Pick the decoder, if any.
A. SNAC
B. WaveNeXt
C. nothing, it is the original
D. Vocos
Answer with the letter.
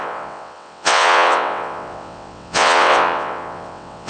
B